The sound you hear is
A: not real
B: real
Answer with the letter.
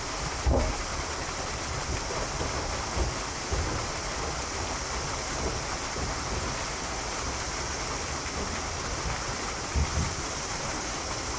B